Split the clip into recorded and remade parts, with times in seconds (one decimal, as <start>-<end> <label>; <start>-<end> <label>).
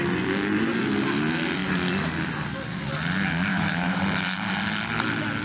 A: 0.0-3.5 recorded; 3.5-4.0 remade; 4.0-5.4 recorded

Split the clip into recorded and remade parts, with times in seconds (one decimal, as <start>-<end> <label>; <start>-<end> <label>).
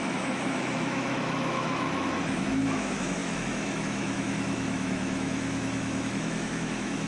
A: 0.0-7.1 remade